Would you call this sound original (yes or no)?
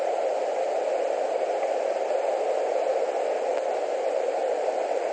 yes